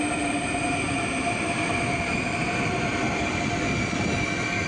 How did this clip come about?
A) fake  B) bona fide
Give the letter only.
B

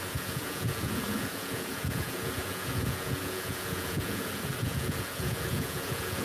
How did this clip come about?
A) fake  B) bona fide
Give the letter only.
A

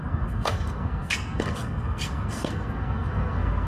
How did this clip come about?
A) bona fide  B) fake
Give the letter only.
B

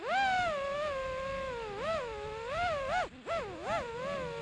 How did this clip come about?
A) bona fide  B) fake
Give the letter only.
A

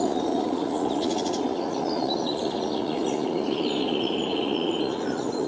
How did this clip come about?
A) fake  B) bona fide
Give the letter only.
A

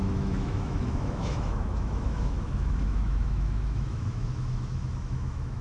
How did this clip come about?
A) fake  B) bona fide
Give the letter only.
A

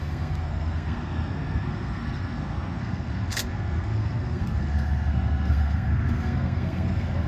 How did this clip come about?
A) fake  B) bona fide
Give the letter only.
A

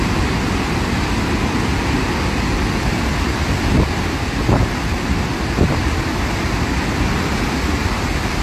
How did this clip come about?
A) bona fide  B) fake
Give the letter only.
A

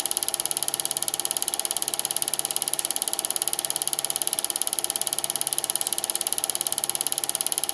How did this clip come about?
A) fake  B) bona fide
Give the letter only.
B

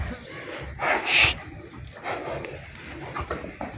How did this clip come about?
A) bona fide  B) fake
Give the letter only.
A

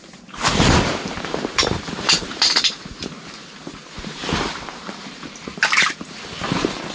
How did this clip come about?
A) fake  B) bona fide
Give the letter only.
A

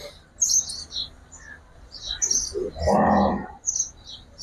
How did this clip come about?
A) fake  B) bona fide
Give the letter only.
B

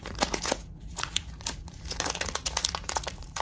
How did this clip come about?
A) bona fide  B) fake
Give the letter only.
B